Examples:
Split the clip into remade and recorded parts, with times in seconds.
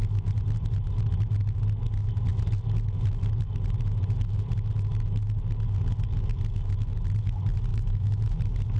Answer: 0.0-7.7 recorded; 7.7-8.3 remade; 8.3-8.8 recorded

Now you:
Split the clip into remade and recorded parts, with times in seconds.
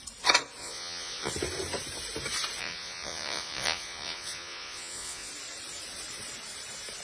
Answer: 0.0-0.6 recorded; 0.6-1.3 remade; 1.3-2.6 recorded; 2.6-5.3 remade; 5.3-7.0 recorded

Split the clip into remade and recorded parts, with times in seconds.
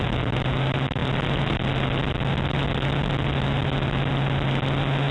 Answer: 0.0-5.1 recorded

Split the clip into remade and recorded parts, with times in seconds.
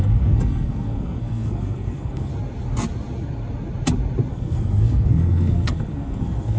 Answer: 0.0-2.3 remade; 2.3-4.3 recorded; 4.3-6.6 remade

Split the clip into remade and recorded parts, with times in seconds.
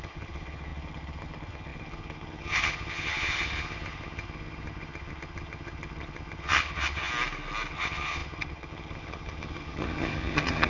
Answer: 0.0-7.1 remade; 7.1-7.7 recorded; 7.7-10.7 remade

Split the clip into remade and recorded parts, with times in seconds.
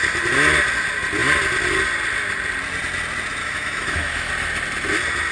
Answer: 0.0-3.4 recorded; 3.4-4.3 remade; 4.3-5.3 recorded